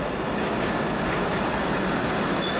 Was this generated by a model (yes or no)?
no